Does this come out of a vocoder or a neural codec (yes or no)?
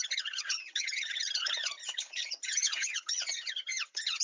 yes